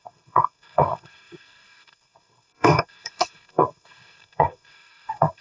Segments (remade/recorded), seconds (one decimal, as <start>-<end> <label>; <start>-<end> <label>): 0.0-5.4 remade